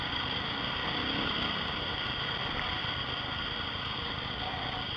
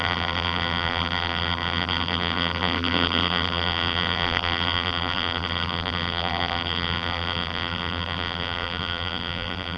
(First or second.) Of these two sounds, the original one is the first